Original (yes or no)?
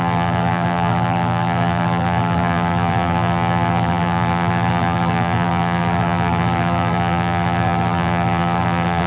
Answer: no